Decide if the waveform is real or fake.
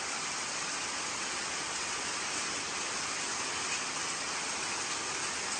real